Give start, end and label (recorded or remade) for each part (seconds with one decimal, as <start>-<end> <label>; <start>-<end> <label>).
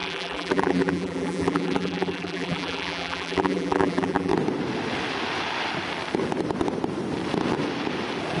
0.0-4.3 remade; 4.3-8.4 recorded